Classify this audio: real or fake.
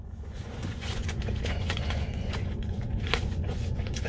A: fake